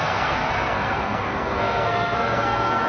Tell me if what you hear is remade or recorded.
remade